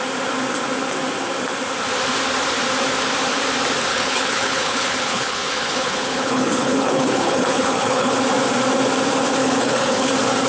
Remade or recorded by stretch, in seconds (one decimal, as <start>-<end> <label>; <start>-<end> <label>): 0.0-3.9 recorded; 3.9-8.2 remade; 8.2-9.4 recorded; 9.4-10.1 remade; 10.1-10.5 recorded